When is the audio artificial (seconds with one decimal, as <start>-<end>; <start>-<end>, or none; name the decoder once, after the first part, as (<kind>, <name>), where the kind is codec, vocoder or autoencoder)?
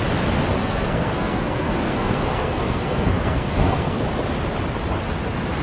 0.6-4.0 (codec, SNAC)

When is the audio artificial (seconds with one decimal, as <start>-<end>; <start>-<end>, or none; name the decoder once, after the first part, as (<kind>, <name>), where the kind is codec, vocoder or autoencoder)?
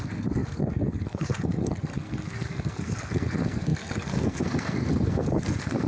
0.0-5.9 (codec, SNAC)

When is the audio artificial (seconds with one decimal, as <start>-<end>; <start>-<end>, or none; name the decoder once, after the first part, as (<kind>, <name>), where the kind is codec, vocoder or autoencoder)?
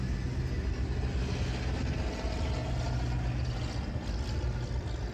none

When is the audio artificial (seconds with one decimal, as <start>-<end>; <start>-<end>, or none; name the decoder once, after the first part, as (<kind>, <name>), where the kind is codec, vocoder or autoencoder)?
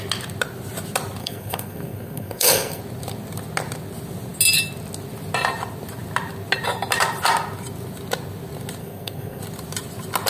1.2-2.8 (codec, SNAC); 8.8-9.4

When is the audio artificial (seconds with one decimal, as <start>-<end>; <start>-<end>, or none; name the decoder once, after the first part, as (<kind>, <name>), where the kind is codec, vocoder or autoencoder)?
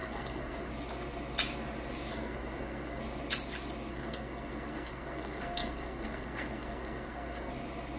0.0-0.7 (codec, SNAC); 2.1-3.0; 3.9-7.5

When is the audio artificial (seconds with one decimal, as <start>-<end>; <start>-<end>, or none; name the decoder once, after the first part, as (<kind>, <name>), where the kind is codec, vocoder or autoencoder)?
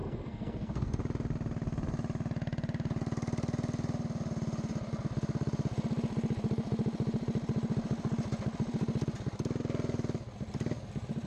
0.0-1.0 (codec, SNAC)